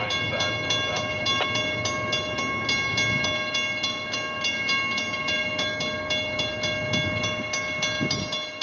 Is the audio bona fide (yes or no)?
yes